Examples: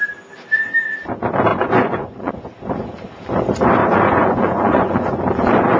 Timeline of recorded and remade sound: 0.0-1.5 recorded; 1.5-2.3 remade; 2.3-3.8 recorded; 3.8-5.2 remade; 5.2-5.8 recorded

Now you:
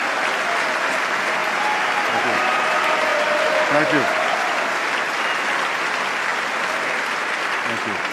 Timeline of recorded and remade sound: 0.0-8.1 recorded

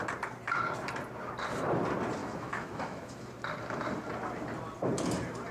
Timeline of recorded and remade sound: 0.0-2.2 recorded; 2.2-3.3 remade; 3.3-5.5 recorded

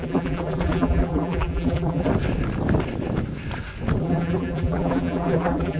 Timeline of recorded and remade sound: 0.0-2.1 remade; 2.1-4.0 recorded; 4.0-5.8 remade

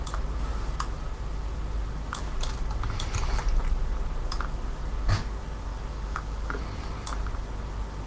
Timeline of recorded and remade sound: 0.0-5.7 recorded; 5.7-6.6 remade; 6.6-8.1 recorded

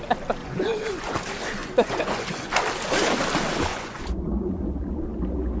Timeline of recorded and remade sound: 0.0-0.4 recorded; 0.4-1.1 remade; 1.1-1.6 recorded; 1.6-2.5 remade; 2.5-3.7 recorded; 3.7-4.8 remade; 4.8-5.6 recorded

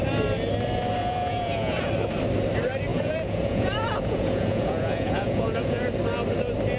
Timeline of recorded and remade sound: 0.0-1.0 recorded; 1.0-1.9 remade; 1.9-2.9 recorded; 2.9-5.9 remade; 5.9-6.8 recorded